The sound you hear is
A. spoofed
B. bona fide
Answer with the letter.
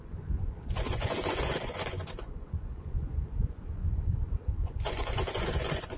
A